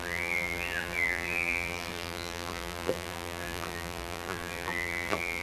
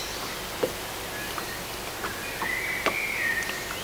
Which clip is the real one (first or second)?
second